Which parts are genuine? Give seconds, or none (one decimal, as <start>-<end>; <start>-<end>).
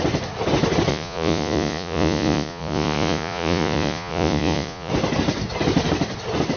0.0-0.9; 4.9-6.6